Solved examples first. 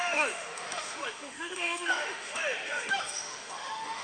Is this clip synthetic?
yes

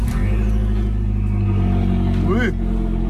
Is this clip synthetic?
no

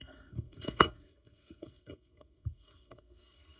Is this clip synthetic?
yes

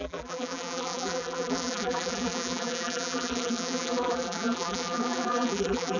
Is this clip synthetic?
yes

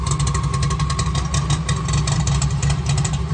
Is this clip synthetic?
no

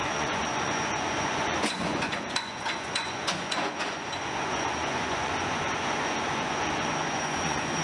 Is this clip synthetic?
yes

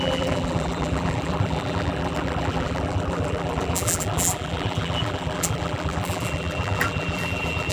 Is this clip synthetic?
yes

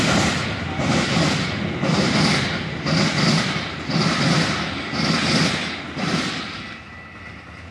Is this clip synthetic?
no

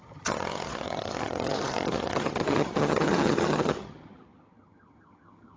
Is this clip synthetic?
yes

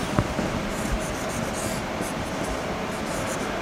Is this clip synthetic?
no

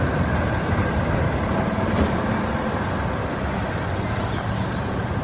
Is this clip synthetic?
no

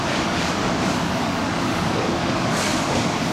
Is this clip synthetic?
yes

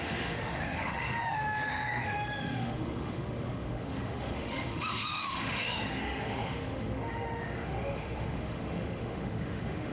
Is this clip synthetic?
yes